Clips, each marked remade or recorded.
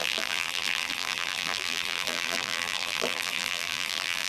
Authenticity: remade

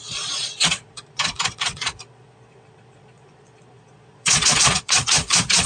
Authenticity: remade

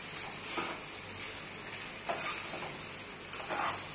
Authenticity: recorded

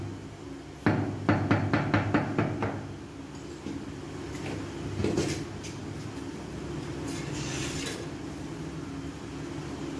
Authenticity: recorded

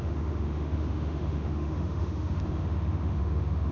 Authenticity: remade